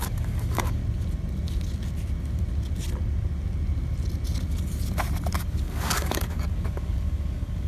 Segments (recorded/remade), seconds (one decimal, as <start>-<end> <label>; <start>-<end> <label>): 0.0-0.8 remade; 0.8-5.4 recorded; 5.4-7.7 remade